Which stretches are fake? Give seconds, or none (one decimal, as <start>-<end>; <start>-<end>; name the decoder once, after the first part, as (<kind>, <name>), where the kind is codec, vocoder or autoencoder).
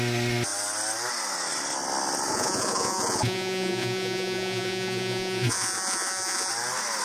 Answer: 2.3-6.5 (vocoder, Vocos)